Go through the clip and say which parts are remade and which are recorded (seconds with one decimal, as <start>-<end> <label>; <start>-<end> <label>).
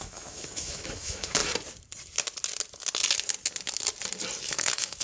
0.0-1.4 remade; 1.4-4.4 recorded; 4.4-5.0 remade